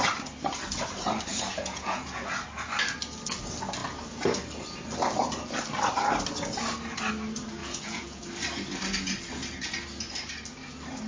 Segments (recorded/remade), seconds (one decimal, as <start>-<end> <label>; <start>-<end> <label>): 0.0-1.3 recorded; 1.3-2.3 remade; 2.3-7.6 recorded; 7.6-8.2 remade; 8.2-11.1 recorded